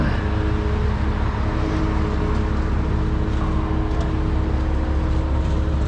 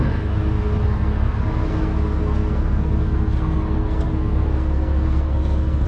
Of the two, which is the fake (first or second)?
second